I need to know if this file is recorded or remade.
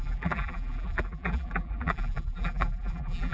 remade